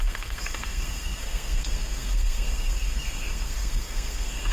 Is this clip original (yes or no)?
no